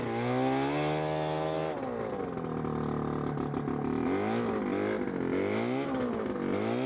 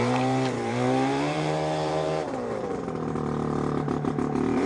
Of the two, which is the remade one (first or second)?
second